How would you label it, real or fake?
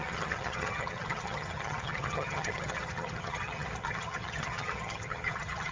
fake